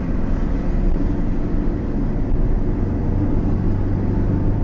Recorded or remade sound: recorded